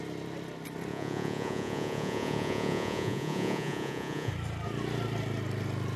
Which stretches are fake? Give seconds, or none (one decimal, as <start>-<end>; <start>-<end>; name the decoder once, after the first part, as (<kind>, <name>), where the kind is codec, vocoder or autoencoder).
0.9-4.3 (vocoder, Vocos)